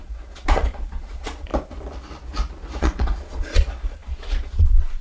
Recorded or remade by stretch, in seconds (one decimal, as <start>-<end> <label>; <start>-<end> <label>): 0.0-1.5 remade; 1.5-2.8 recorded; 2.8-5.0 remade

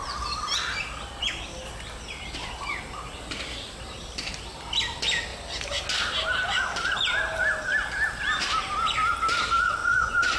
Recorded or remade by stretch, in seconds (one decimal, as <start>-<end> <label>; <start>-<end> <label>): 0.0-9.8 recorded; 9.8-10.4 remade

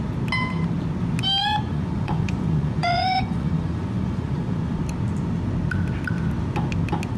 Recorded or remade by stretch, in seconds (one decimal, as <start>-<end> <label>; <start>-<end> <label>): 0.0-1.4 recorded; 1.4-4.8 remade; 4.8-7.2 recorded

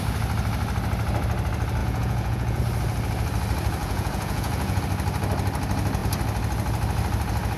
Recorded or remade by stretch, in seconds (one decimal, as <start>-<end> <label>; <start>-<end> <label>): 0.0-1.8 recorded; 1.8-2.6 remade; 2.6-3.8 recorded; 3.8-4.8 remade; 4.8-7.6 recorded